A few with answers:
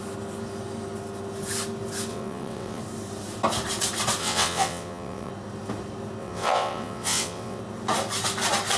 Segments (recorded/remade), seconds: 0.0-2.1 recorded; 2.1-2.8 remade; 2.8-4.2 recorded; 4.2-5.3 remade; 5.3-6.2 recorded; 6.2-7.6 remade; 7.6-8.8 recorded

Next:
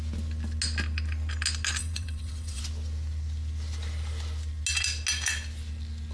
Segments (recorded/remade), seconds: 0.0-1.8 recorded; 1.8-2.6 remade; 2.6-6.1 recorded